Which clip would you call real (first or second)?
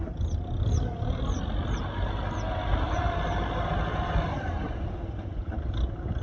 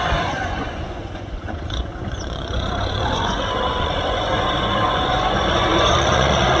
first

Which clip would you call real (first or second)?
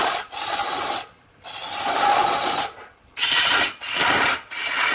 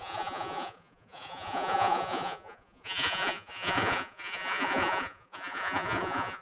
first